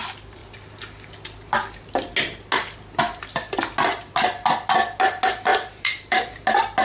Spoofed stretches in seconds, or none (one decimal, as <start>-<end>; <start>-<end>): 5.5-6.2